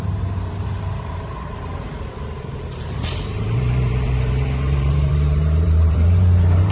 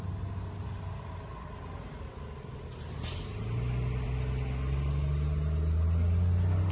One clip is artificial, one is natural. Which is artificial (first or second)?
first